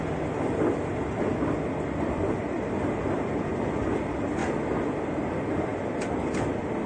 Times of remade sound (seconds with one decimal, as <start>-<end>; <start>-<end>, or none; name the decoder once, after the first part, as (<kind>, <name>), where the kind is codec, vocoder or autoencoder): none